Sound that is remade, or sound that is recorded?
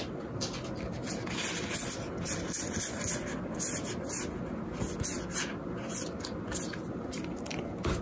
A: recorded